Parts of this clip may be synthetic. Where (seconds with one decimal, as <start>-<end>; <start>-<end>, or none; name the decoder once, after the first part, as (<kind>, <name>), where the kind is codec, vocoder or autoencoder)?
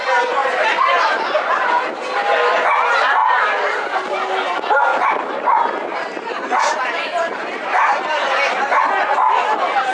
0.4-1.5 (vocoder, BigVGAN v2); 3.2-4.1; 4.9-8.8